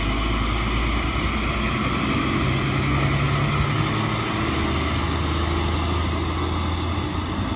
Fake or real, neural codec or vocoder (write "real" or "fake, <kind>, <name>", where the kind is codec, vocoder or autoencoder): real